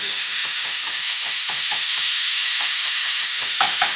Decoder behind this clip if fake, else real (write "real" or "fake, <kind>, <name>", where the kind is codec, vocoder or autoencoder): fake, autoencoder, DAC-VAE